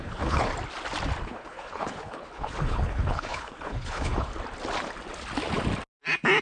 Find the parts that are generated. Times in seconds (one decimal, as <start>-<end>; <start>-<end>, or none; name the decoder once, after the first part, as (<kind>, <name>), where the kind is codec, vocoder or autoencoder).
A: 0.0-0.5 (codec, HILCodec); 1.2-4.3